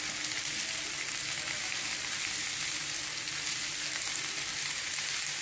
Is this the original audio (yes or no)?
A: yes